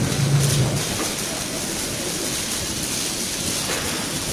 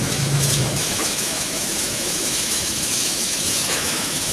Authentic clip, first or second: first